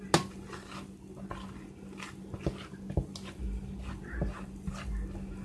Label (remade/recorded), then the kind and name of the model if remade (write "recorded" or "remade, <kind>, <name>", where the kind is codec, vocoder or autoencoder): recorded